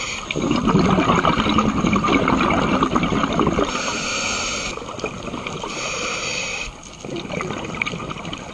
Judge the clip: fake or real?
real